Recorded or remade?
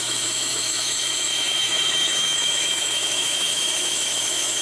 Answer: remade